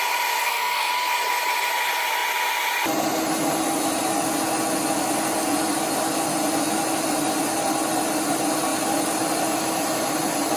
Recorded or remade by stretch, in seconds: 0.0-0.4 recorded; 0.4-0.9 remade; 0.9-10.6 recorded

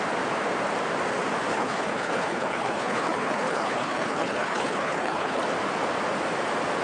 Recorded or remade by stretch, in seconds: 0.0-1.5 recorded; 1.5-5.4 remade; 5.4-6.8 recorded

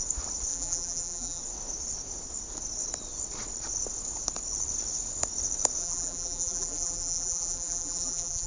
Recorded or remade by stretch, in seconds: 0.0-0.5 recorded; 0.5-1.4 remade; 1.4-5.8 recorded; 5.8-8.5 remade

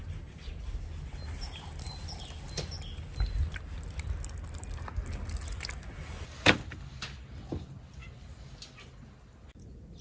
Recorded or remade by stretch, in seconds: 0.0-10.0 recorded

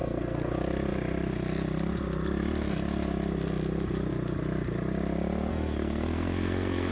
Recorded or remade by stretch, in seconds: 0.0-0.5 remade; 0.5-5.5 recorded; 5.5-6.9 remade

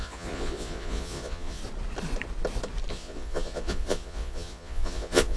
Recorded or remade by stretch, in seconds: 0.0-1.6 remade; 1.6-2.9 recorded; 2.9-5.4 remade

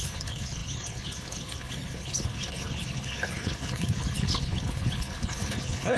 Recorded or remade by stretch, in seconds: 0.0-6.0 remade